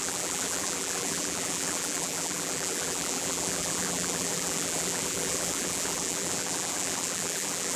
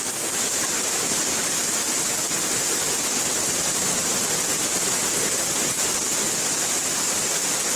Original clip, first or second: second